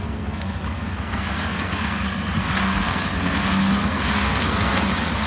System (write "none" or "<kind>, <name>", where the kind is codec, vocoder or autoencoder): codec, SNAC